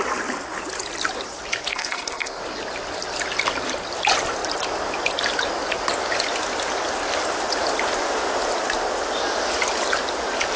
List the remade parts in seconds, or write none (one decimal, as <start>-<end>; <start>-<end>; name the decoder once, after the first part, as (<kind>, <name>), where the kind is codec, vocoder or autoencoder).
1.7-2.4 (codec, SNAC)